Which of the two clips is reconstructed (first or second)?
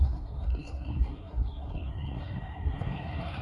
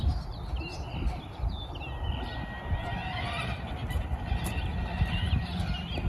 first